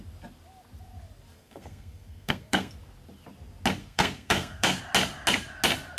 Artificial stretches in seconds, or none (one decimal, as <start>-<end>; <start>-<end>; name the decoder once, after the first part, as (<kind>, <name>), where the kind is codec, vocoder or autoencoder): 1.4-2.7 (codec, SNAC); 3.8-4.8